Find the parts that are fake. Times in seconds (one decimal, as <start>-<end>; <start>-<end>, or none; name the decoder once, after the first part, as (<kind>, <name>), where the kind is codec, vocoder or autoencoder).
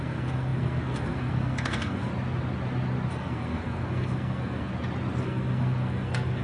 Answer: 0.0-2.1 (codec, SNAC); 3.1-4.7; 5.2-6.4